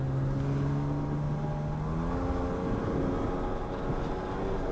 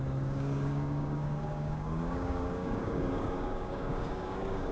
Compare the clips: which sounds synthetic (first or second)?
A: second